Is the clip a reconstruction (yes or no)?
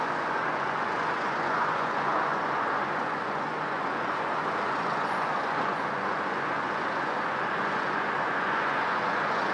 yes